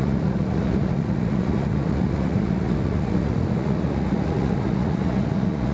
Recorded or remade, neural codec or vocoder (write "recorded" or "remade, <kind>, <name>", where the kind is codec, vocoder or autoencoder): remade, vocoder, Vocos